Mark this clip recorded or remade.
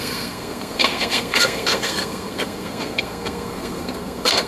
remade